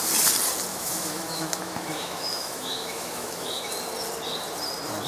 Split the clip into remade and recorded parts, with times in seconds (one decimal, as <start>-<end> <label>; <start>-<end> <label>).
0.0-0.7 recorded; 0.7-3.7 remade; 3.7-5.1 recorded